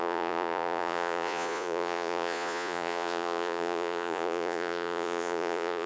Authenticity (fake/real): fake